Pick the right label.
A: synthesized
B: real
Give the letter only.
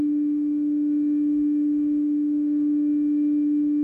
A